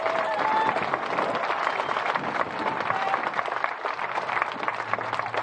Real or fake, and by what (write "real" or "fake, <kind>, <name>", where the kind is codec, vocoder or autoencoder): real